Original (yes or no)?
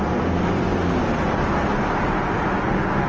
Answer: yes